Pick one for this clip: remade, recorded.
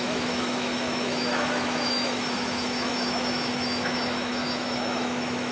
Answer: remade